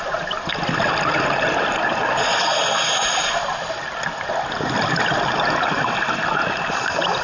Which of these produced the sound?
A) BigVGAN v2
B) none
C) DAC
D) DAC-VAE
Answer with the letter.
B